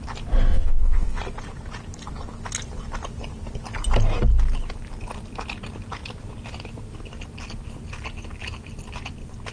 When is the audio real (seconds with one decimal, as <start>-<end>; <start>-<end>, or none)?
0.0-0.5; 1.2-9.5